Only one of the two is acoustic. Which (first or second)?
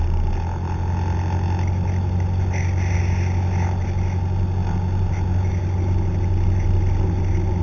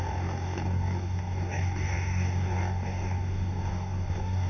first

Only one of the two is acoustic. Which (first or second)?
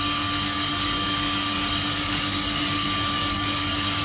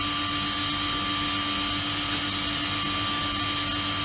second